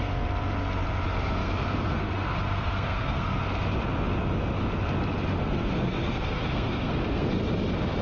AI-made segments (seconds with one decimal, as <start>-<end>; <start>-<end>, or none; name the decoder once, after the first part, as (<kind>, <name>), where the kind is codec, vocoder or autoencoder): 1.4-3.4 (codec, SNAC); 5.4-7.3

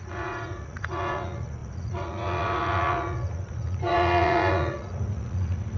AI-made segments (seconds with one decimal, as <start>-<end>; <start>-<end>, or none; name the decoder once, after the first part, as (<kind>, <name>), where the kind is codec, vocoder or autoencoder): 0.0-5.8 (vocoder, Vocos)

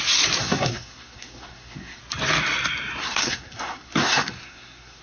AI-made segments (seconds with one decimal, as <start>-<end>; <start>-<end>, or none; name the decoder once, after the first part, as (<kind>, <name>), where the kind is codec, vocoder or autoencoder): 0.4-2.0 (codec, SNAC); 3.0-5.0

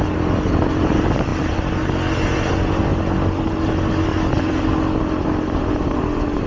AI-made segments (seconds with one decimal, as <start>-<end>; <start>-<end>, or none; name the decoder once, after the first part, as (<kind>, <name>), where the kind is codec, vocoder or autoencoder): none

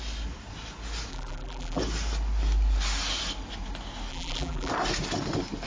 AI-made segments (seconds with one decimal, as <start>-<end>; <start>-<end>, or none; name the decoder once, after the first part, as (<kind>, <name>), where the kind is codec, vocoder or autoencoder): 1.1-1.8 (vocoder, BigVGAN v2); 4.1-4.7

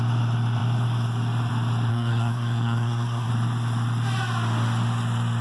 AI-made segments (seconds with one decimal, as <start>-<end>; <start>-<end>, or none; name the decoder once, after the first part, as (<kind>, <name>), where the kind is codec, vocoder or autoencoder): 1.9-3.3 (codec, SNAC)